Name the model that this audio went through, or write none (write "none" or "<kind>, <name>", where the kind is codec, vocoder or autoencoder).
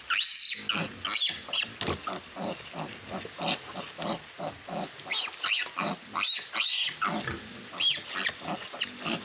none